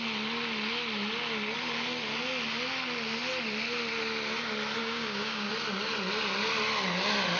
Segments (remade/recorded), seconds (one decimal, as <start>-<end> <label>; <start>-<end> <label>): 0.0-4.8 recorded; 4.8-5.5 remade; 5.5-7.4 recorded